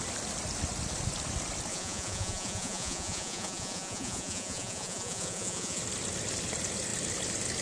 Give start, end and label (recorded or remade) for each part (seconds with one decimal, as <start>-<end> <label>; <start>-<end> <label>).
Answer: 0.0-1.7 recorded; 1.7-5.8 remade; 5.8-7.6 recorded